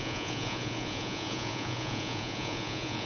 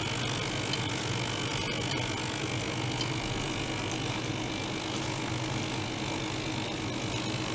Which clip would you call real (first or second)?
second